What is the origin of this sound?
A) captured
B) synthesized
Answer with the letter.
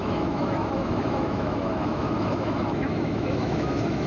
B